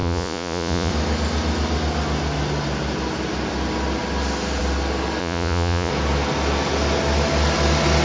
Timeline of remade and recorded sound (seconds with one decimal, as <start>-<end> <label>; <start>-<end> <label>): 0.0-0.9 remade; 0.9-5.2 recorded; 5.2-5.9 remade; 5.9-8.0 recorded